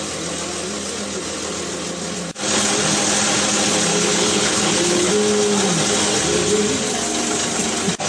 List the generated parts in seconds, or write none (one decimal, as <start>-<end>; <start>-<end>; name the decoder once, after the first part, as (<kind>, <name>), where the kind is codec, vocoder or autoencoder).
3.9-5.1 (codec, HILCodec)